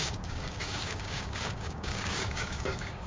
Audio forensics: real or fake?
fake